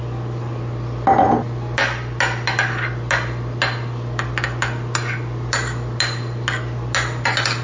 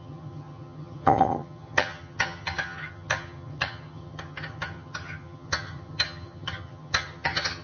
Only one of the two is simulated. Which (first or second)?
second